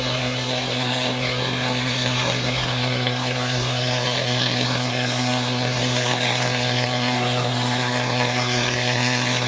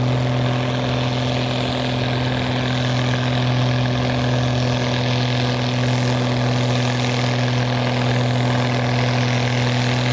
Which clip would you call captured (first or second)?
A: second